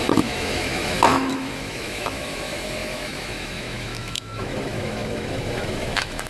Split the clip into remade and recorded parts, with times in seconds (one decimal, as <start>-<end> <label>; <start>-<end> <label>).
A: 0.0-6.3 remade